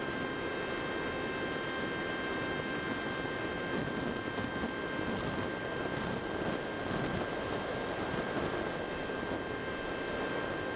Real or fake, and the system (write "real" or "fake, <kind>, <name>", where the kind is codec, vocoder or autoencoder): real